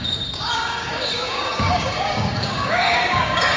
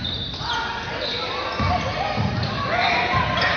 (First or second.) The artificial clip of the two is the first